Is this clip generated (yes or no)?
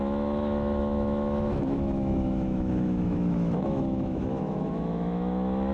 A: yes